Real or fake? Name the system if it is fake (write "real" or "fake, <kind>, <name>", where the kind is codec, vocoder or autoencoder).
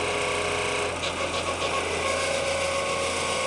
real